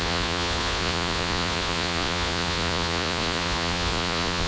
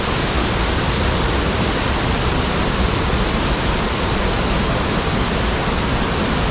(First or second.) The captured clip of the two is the second